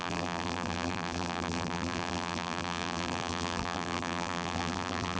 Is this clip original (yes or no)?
no